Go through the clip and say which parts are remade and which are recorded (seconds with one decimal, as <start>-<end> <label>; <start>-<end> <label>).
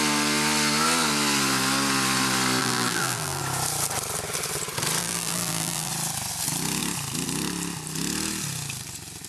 0.0-2.6 recorded; 2.6-3.4 remade; 3.4-5.0 recorded; 5.0-5.9 remade; 5.9-9.3 recorded